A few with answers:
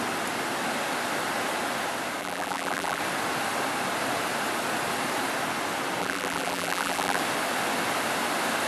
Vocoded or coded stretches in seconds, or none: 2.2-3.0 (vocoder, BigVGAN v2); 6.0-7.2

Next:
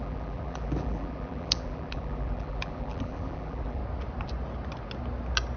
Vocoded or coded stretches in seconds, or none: 0.0-3.8 (vocoder, BigVGAN v2)

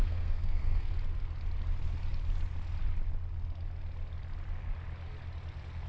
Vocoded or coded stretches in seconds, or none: 0.0-0.9 (codec, SNAC)

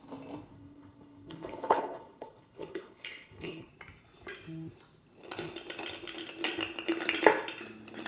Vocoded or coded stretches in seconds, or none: 0.5-3.7 (codec, HILCodec)

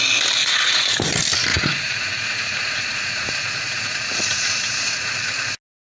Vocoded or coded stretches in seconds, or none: 0.4-1.0 (vocoder, Vocos); 1.5-5.1

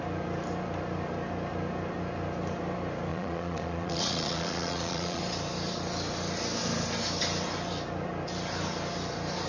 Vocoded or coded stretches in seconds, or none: 3.1-5.2 (vocoder, Vocos)